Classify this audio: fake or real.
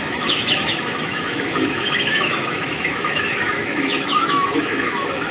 fake